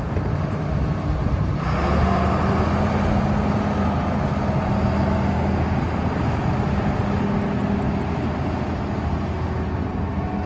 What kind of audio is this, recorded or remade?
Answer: recorded